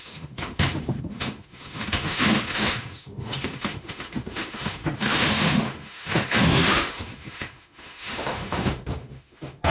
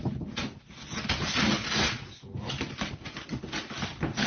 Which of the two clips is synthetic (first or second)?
first